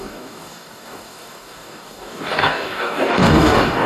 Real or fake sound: fake